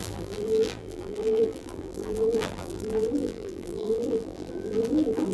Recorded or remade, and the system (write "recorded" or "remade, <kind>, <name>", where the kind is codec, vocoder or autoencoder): remade, vocoder, BigVGAN v2